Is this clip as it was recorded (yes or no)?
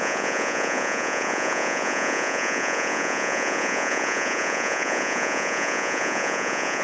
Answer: no